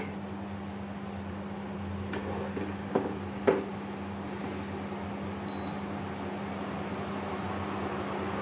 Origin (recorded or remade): recorded